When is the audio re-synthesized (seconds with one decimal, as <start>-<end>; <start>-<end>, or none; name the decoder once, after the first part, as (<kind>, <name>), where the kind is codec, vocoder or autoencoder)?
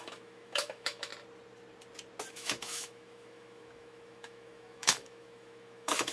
0.0-1.1 (autoencoder, DAC-VAE); 2.3-6.1